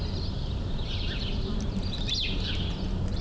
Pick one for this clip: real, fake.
real